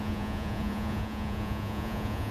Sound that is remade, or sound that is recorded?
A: remade